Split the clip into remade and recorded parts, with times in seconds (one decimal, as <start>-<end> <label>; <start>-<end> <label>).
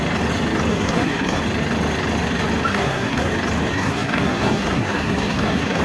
0.0-0.7 recorded; 0.7-1.4 remade; 1.4-2.7 recorded; 2.7-3.3 remade; 3.3-3.7 recorded; 3.7-5.8 remade